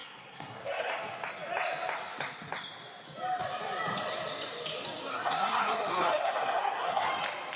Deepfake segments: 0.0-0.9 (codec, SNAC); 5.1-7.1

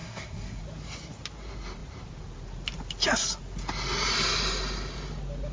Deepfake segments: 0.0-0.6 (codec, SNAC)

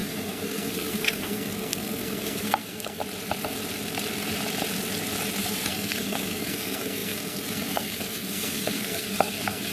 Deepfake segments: 0.0-3.0 (codec, SNAC); 5.4-9.7

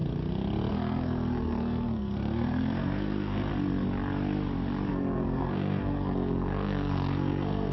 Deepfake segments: 0.7-3.5 (codec, SNAC); 4.9-7.7